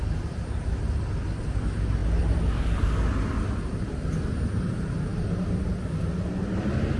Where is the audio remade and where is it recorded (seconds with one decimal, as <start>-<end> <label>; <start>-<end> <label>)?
0.0-7.0 recorded